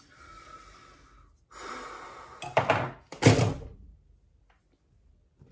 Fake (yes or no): no